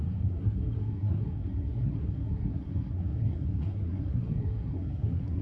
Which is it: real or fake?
fake